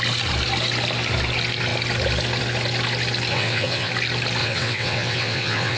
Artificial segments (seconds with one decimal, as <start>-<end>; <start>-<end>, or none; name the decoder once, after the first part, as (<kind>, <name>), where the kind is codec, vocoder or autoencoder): 3.3-3.9 (vocoder, WaveNeXt); 4.4-5.8